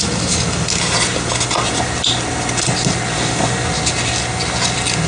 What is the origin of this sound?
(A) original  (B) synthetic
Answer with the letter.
A